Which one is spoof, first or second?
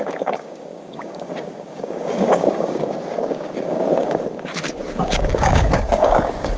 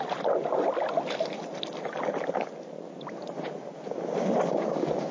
first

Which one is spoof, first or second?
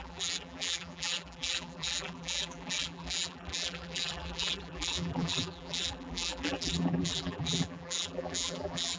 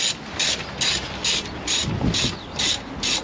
first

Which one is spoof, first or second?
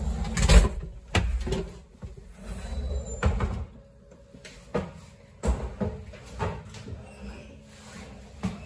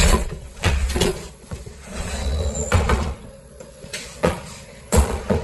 second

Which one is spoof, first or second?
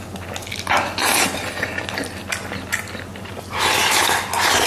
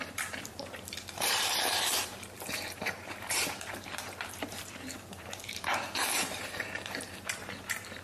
second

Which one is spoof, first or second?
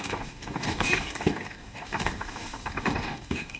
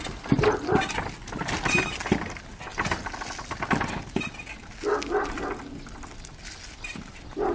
first